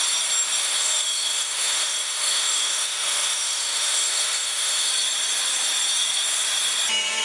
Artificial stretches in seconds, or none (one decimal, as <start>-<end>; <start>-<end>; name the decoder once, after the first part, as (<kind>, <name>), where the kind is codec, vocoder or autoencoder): 0.6-4.9 (autoencoder, DAC-VAE)